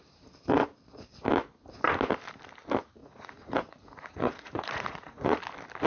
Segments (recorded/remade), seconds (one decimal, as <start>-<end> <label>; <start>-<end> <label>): 0.0-3.0 recorded; 3.0-5.4 remade; 5.4-5.9 recorded